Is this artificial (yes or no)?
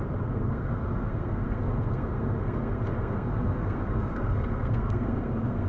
yes